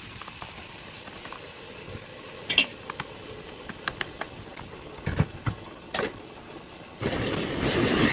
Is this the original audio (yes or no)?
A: yes